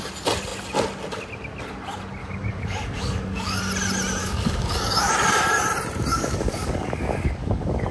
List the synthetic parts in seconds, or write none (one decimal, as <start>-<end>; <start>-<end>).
2.2-3.6; 4.2-5.1; 6.1-7.9